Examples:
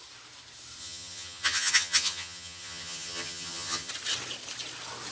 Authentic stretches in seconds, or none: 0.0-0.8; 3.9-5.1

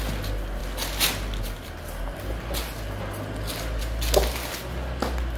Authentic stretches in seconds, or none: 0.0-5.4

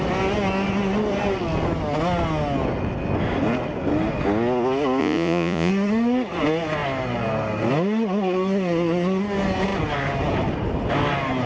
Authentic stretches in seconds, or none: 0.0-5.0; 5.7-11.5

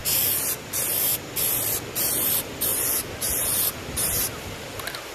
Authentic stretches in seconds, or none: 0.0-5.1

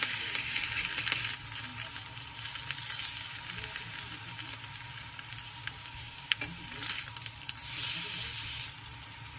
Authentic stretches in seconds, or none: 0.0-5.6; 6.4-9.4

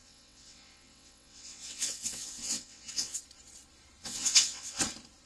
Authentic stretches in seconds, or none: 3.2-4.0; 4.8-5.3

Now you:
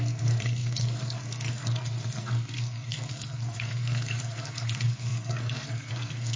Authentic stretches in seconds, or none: none

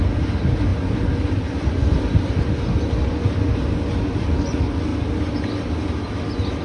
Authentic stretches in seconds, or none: 0.0-6.6